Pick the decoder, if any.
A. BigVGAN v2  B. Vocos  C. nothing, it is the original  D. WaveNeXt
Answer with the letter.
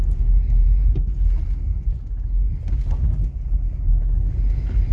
C